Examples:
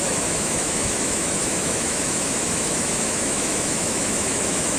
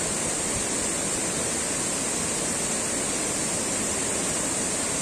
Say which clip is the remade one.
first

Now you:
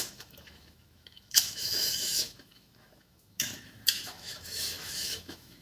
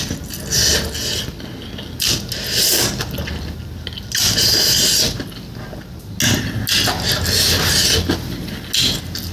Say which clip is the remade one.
first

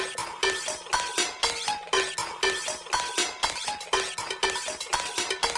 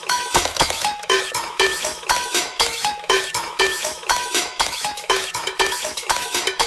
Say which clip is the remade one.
second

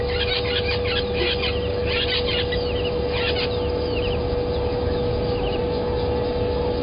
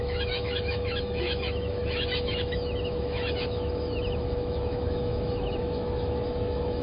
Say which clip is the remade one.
second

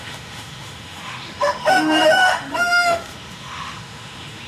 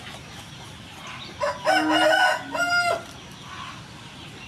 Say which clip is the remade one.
first